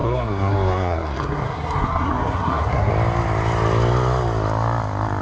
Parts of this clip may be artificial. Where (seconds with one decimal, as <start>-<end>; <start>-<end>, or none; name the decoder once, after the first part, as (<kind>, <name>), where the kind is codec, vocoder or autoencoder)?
0.0-2.9 (codec, SNAC)